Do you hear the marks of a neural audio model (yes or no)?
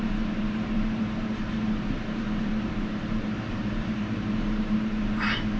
yes